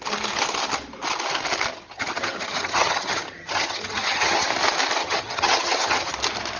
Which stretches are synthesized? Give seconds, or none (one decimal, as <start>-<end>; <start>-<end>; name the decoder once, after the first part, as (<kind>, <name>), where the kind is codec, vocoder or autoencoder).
1.7-4.5 (vocoder, HiFi-GAN); 5.0-6.1